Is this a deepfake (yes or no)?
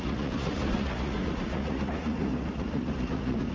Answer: yes